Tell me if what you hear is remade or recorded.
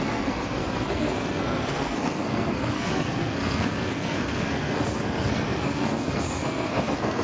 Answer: remade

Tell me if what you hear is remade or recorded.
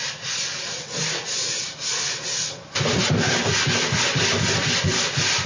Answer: recorded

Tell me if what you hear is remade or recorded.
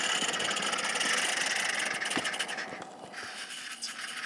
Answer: recorded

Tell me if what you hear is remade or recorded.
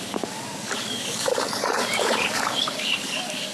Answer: remade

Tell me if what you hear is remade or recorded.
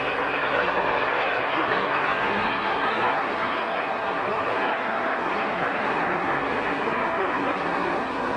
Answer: remade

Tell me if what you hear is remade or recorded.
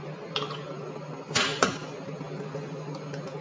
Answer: recorded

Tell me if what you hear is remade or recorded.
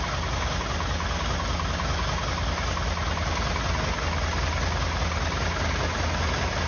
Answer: recorded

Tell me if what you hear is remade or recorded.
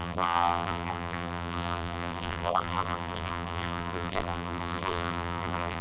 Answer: remade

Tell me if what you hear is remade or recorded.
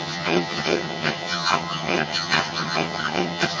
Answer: remade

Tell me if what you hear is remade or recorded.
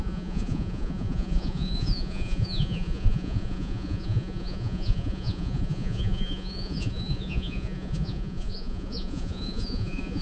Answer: remade